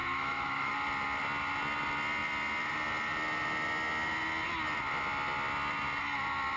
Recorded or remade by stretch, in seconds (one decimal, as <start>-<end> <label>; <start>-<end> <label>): 0.0-0.7 remade; 0.7-6.6 recorded